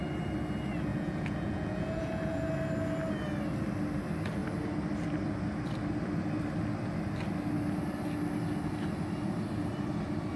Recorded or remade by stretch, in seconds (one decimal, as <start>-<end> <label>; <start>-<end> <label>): 0.0-0.9 recorded; 0.9-2.5 remade; 2.5-10.4 recorded